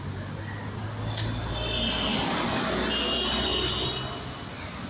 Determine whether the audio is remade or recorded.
recorded